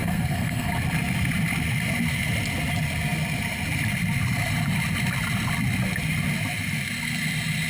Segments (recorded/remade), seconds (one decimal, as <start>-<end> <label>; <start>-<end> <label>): 0.0-0.7 remade; 0.7-7.7 recorded